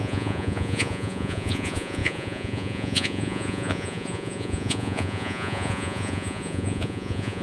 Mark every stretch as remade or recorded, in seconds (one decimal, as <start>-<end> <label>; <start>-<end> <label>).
0.0-7.4 remade